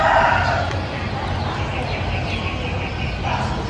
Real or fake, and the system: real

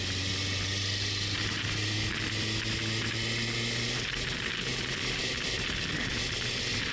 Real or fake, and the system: real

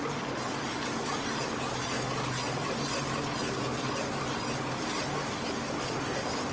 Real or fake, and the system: real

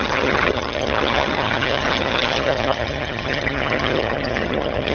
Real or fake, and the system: fake, vocoder, HiFi-GAN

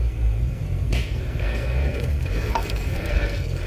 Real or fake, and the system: fake, codec, SNAC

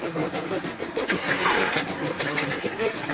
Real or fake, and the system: fake, codec, SNAC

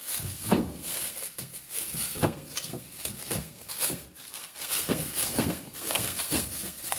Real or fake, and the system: fake, codec, SNAC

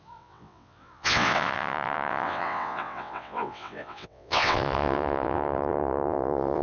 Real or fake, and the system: fake, vocoder, WaveNeXt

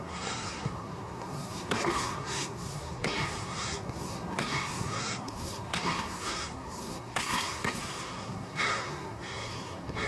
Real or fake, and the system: fake, codec, SNAC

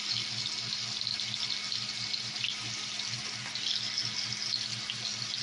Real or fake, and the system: real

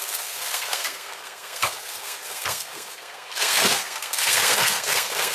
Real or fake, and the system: fake, codec, SNAC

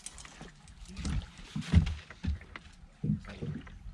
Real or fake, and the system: real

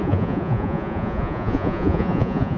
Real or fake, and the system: fake, vocoder, Vocos